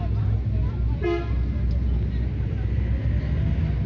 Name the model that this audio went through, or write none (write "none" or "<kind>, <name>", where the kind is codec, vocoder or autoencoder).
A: none